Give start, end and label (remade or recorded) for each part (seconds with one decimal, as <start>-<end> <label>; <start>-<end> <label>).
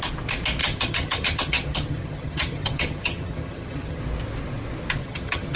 0.0-0.6 recorded; 0.6-4.0 remade; 4.0-5.0 recorded; 5.0-5.6 remade